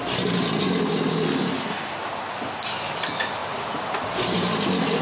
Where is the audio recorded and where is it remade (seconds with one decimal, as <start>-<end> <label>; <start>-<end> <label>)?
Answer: 0.0-3.4 recorded; 3.4-4.5 remade; 4.5-5.0 recorded